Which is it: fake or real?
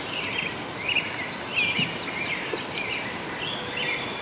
real